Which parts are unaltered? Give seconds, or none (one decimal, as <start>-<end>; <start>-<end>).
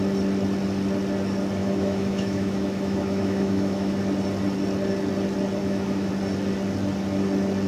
0.0-1.6; 4.0-5.6; 6.1-7.7